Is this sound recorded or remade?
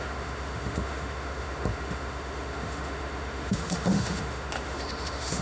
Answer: remade